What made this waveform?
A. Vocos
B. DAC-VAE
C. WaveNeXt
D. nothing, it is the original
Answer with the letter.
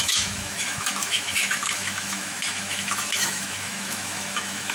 B